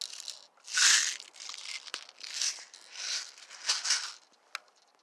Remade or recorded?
recorded